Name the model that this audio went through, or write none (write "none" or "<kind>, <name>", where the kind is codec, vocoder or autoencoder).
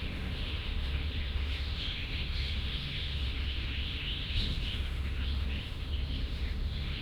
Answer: autoencoder, DAC-VAE